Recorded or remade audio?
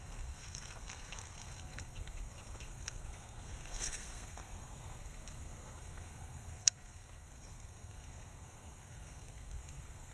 remade